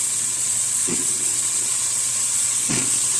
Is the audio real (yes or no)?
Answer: no